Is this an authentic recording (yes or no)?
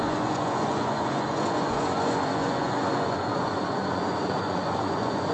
no